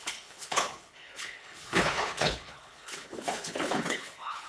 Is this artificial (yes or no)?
yes